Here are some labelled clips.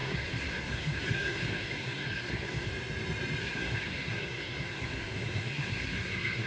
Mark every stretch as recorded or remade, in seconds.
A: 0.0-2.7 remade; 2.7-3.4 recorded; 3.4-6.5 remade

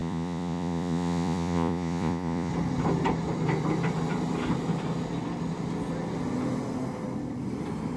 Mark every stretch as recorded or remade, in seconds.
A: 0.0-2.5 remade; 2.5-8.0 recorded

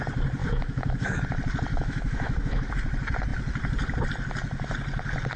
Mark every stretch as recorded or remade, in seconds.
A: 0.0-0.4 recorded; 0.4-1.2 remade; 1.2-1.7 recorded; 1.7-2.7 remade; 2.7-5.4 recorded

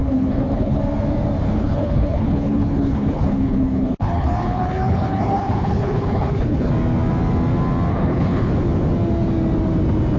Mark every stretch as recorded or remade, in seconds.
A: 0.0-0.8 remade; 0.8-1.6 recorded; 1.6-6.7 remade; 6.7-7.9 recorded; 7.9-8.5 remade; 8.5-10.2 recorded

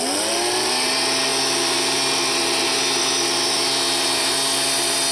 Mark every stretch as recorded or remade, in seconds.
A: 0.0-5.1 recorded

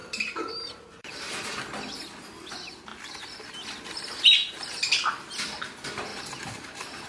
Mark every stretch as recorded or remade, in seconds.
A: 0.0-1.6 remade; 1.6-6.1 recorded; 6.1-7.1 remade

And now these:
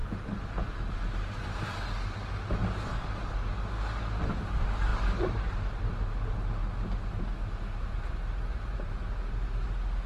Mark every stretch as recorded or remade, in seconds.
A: 0.0-4.2 recorded; 4.2-6.6 remade; 6.6-7.1 recorded; 7.1-10.1 remade